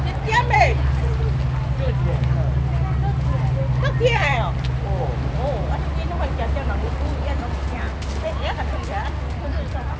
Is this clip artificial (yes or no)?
no